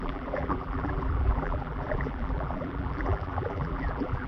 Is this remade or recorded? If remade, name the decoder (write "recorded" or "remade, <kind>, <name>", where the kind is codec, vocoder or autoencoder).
remade, vocoder, BigVGAN v2